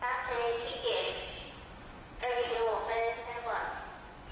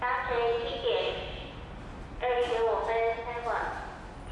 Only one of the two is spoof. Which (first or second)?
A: first